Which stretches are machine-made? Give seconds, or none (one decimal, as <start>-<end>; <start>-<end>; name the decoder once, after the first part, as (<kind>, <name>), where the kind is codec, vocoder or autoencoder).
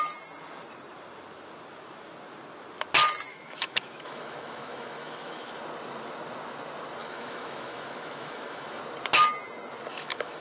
3.3-5.6 (autoencoder, DAC-VAE); 7.0-8.8; 9.9-10.4